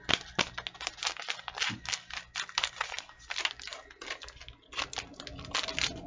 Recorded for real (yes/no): yes